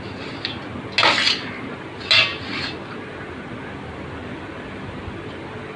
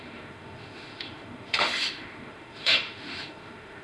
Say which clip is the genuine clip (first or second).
first